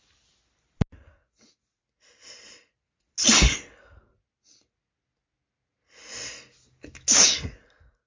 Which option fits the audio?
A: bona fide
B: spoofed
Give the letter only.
A